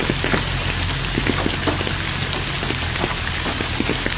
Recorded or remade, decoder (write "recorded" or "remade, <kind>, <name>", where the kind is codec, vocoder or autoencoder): recorded